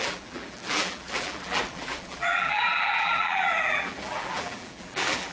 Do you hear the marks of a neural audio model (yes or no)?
yes